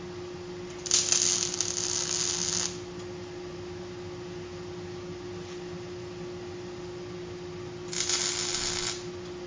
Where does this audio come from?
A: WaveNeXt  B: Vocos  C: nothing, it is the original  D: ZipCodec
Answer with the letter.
C